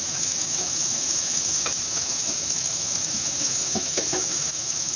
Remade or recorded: remade